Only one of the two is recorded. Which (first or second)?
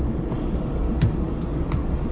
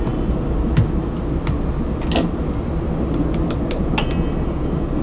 second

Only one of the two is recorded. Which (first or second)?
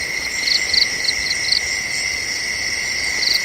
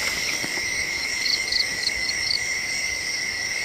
first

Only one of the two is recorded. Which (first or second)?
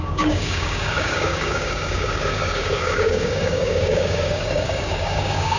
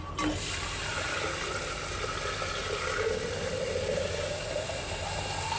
second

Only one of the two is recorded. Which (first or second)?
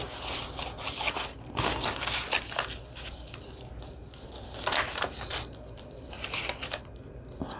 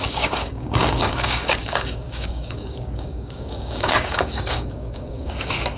first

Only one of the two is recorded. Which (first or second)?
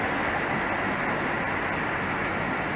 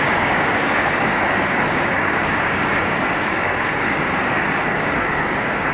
first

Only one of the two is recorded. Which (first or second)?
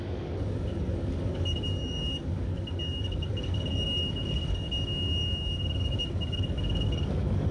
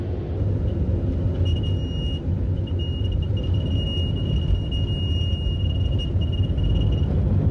second